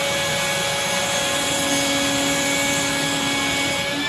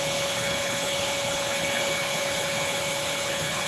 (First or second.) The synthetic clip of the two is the second